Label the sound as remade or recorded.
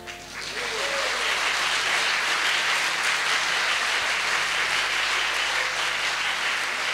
recorded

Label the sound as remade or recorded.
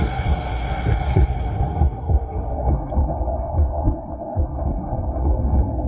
remade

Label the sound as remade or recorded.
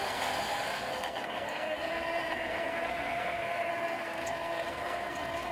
remade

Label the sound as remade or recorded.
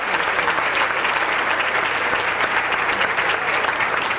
recorded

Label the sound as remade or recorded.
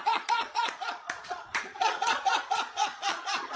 remade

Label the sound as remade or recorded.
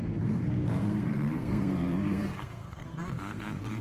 remade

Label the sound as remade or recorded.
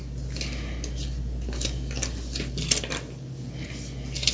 recorded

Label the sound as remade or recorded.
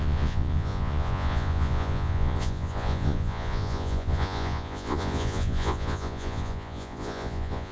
remade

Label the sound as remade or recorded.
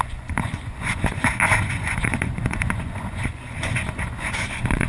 remade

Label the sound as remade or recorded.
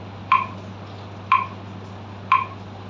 recorded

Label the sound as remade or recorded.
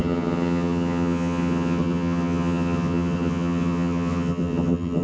remade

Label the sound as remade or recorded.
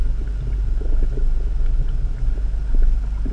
recorded